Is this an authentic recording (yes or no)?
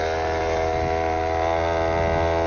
yes